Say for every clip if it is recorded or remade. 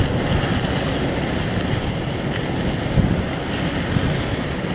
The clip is recorded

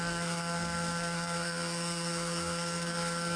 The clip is remade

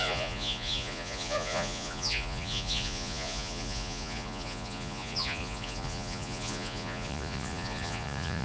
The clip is remade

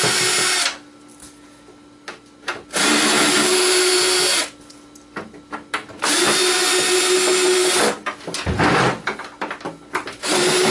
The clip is recorded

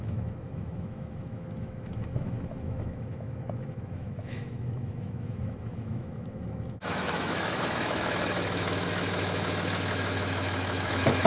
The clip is remade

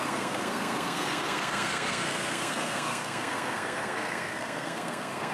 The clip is remade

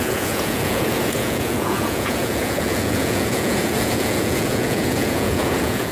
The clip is remade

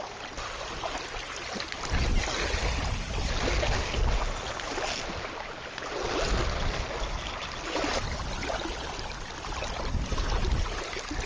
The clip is recorded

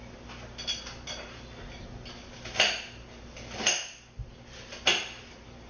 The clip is recorded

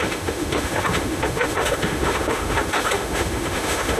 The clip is remade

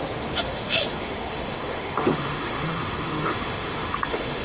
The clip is remade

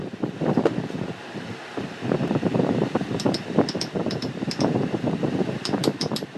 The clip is remade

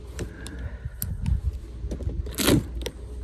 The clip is recorded